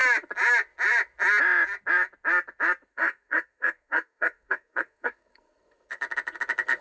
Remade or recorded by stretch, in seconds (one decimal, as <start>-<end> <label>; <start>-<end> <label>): 0.0-2.9 recorded; 2.9-6.0 remade; 6.0-6.8 recorded